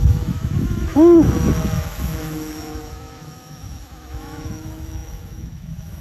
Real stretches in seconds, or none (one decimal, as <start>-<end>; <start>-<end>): none